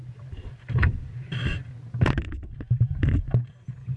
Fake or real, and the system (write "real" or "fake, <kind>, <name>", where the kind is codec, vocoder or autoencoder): real